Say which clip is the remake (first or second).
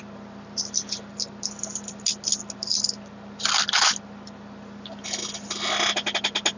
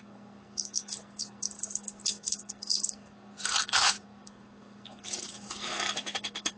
second